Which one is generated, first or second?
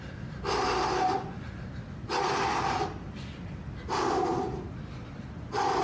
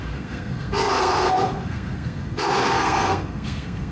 second